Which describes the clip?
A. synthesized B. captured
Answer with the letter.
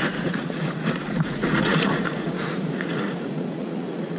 A